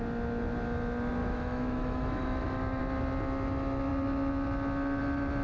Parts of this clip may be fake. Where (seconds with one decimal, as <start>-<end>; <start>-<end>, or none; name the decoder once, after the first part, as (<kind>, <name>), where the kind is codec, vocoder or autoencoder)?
1.2-2.8 (autoencoder, DAC-VAE)